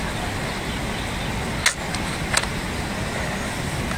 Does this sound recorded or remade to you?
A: recorded